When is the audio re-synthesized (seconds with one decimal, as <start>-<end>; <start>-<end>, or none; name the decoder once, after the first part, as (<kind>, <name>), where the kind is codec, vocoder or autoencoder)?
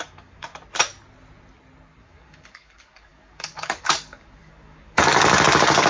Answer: 0.0-0.5 (codec, DAC); 2.0-5.9